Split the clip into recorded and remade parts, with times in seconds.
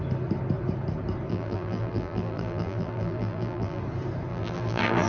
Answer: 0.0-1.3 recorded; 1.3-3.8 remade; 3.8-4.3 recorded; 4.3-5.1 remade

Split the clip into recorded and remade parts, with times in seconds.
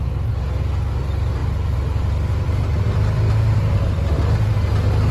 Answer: 0.0-1.4 recorded; 1.4-4.5 remade; 4.5-5.1 recorded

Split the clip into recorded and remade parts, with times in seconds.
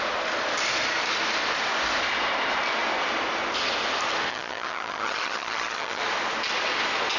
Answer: 0.0-4.3 recorded; 4.3-6.0 remade; 6.0-7.2 recorded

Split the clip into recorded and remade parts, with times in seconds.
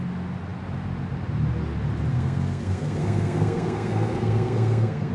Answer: 0.0-2.1 recorded; 2.1-5.1 remade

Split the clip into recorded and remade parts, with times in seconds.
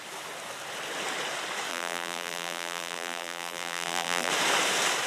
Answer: 0.0-1.7 recorded; 1.7-4.3 remade; 4.3-5.1 recorded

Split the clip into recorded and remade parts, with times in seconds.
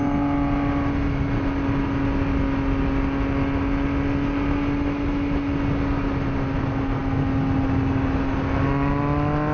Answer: 0.0-9.5 recorded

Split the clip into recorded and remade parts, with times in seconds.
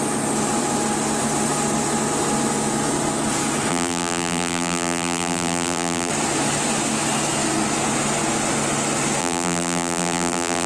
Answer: 0.0-3.7 recorded; 3.7-6.1 remade; 6.1-9.2 recorded; 9.2-10.7 remade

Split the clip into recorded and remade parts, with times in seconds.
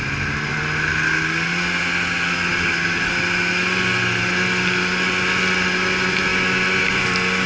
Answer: 0.0-7.5 recorded